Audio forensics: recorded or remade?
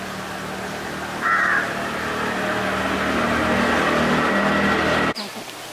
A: recorded